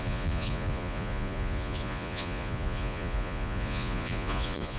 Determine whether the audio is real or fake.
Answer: fake